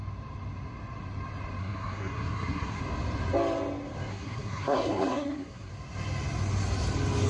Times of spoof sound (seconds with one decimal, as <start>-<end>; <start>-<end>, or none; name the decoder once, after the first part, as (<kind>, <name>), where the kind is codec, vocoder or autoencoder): 1.6-2.8 (codec, SNAC); 4.1-5.7

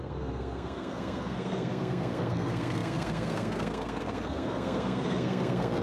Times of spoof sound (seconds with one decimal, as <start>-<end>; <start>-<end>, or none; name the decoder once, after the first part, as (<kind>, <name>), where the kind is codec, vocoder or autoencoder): 0.0-5.8 (codec, SNAC)